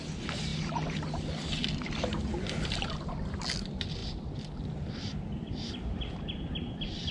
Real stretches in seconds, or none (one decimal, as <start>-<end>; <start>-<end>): 0.0-7.1